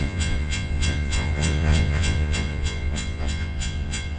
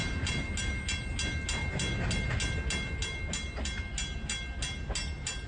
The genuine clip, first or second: second